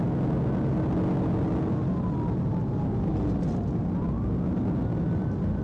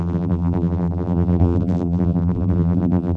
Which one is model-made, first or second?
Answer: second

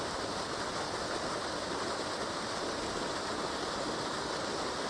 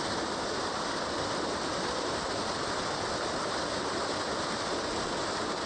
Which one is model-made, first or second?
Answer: second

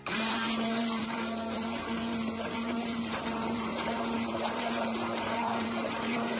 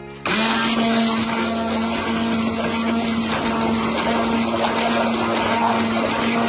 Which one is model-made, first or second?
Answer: first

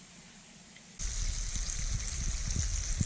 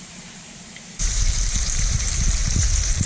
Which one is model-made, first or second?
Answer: second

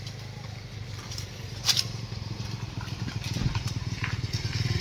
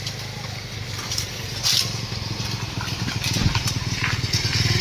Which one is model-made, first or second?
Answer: first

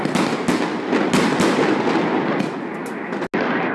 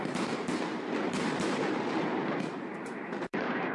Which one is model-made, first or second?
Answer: second